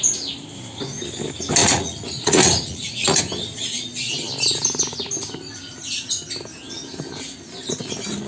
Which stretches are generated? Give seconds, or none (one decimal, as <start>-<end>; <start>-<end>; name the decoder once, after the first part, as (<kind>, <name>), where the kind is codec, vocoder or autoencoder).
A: 1.6-3.2 (vocoder, Vocos)